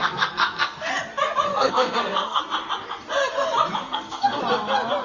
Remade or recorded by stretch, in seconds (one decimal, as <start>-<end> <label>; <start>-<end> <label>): 0.0-0.9 remade; 0.9-1.5 recorded; 1.5-2.4 remade; 2.4-3.8 recorded; 3.8-4.4 remade; 4.4-5.0 recorded